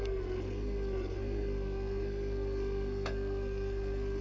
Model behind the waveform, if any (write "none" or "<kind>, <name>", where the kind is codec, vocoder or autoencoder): codec, SNAC